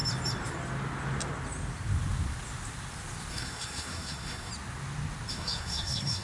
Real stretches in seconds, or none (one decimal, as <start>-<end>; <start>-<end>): 0.0-3.3; 4.5-5.3